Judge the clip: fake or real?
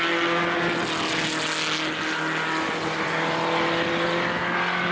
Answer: real